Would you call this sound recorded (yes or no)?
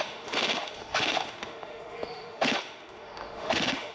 no